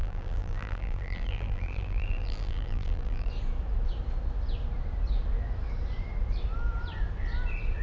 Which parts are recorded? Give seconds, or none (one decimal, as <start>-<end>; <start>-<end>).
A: 3.3-7.8